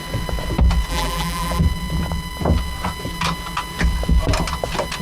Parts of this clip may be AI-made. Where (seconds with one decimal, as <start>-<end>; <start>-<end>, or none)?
0.9-1.6